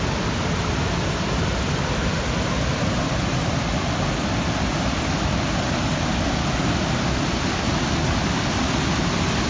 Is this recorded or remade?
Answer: recorded